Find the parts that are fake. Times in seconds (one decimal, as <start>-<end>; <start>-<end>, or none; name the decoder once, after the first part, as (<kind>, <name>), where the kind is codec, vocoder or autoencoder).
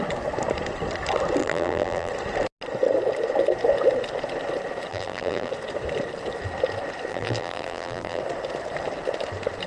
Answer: 1.4-2.1 (vocoder, BigVGAN v2); 4.9-5.5; 7.1-8.2